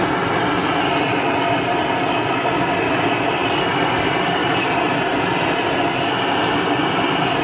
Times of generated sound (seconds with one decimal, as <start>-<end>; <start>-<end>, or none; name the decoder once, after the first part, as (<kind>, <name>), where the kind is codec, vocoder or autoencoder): 4.4-5.4 (vocoder, BigVGAN v2)